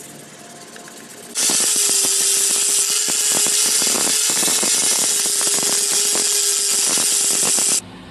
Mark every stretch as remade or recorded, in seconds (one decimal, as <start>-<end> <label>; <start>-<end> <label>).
0.0-8.1 recorded